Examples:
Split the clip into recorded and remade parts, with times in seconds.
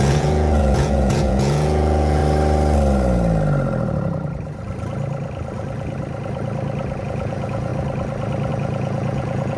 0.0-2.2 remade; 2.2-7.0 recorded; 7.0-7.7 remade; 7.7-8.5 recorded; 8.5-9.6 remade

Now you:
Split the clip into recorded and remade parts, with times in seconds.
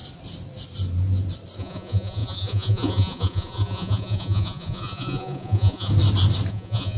0.0-1.6 recorded; 1.6-5.9 remade; 5.9-6.5 recorded; 6.5-7.0 remade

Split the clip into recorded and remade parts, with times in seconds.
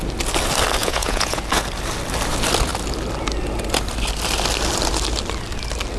0.0-0.8 recorded; 0.8-1.4 remade; 1.4-6.0 recorded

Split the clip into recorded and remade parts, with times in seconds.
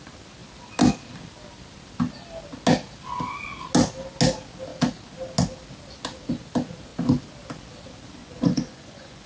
0.0-8.2 recorded; 8.2-9.3 remade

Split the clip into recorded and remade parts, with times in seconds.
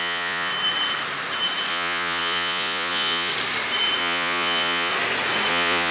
0.0-0.5 remade; 0.5-1.7 recorded; 1.7-3.3 remade; 3.3-4.0 recorded; 4.0-4.9 remade; 4.9-5.5 recorded; 5.5-5.9 remade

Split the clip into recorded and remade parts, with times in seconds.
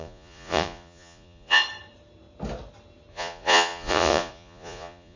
0.0-1.6 remade; 1.6-3.1 recorded; 3.1-5.2 remade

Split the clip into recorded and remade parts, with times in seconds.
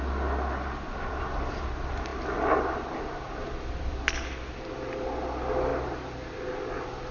0.0-7.1 recorded